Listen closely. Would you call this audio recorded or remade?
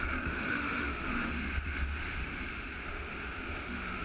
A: remade